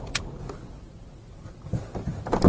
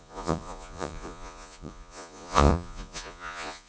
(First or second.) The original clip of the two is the first